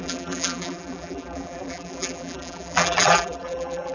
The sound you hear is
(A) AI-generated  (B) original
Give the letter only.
A